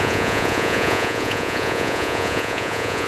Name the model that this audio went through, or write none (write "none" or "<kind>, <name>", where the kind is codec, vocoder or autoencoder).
vocoder, Vocos